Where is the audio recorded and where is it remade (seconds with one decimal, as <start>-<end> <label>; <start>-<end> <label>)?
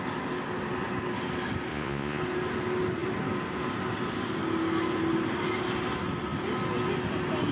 0.0-1.7 recorded; 1.7-2.2 remade; 2.2-7.5 recorded